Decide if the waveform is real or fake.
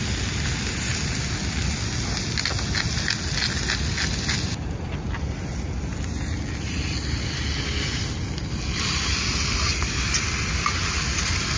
real